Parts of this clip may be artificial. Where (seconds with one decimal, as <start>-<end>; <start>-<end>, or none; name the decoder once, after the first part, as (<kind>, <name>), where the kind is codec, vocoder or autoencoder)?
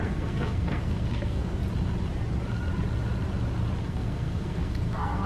0.0-1.6 (codec, SNAC); 3.8-5.3